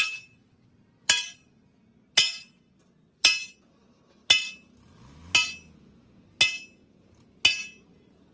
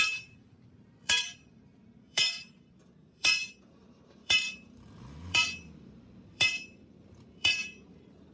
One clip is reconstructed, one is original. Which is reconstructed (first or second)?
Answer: second